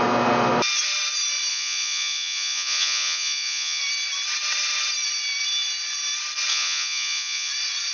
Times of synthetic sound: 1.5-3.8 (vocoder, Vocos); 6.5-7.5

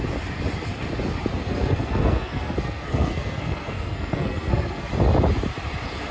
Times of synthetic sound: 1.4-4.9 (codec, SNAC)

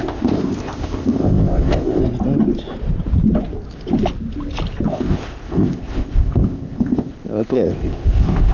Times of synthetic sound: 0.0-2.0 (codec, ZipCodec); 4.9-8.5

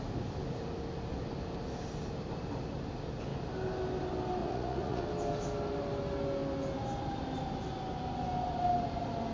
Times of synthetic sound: 4.4-5.0 (vocoder, Vocos)